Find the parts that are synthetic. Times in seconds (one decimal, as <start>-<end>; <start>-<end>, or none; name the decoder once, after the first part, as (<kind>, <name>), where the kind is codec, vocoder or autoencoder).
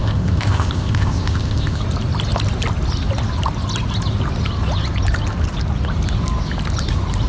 0.0-1.8 (codec, ZipCodec)